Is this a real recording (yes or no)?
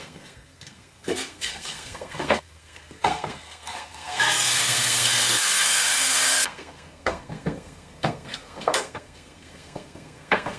no